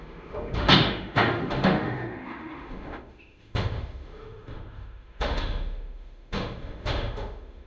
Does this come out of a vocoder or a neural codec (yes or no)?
yes